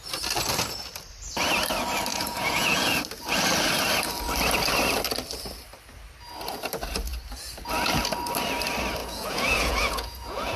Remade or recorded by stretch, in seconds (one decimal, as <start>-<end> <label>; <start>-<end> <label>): 0.0-2.1 recorded; 2.1-3.0 remade; 3.0-9.0 recorded; 9.0-10.6 remade